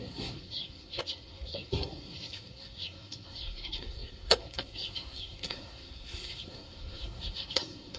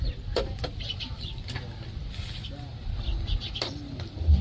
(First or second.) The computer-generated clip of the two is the first